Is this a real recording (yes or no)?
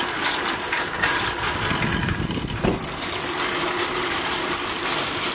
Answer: yes